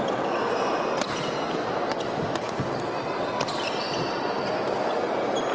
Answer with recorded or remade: recorded